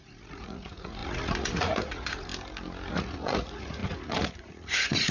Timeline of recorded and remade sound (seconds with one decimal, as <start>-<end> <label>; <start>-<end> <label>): 0.0-2.3 remade; 2.3-2.9 recorded; 2.9-5.1 remade